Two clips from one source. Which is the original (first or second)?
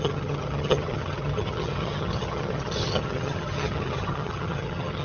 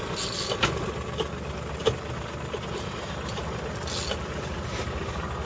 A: second